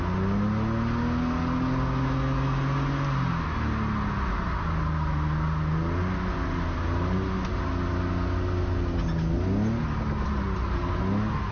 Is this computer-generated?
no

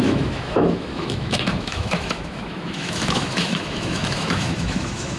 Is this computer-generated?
yes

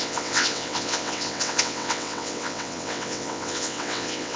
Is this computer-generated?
yes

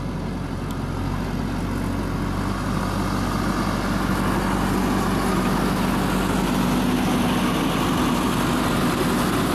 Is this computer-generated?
no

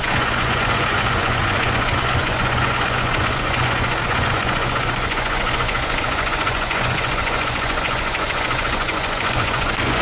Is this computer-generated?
yes